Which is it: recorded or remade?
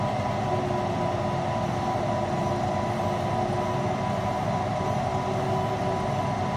recorded